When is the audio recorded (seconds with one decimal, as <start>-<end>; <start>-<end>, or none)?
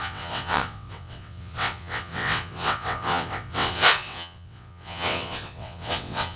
none